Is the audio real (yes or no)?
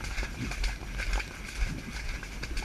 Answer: yes